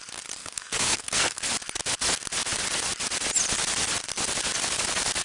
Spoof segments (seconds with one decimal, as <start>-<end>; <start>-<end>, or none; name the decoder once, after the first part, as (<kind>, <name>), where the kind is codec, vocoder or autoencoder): 0.4-1.4 (codec, SNAC)